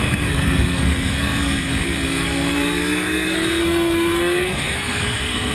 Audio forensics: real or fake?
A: fake